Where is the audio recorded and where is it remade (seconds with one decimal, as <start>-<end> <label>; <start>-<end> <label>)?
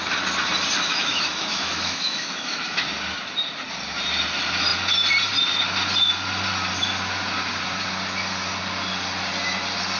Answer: 0.0-0.9 recorded; 0.9-2.8 remade; 2.8-10.0 recorded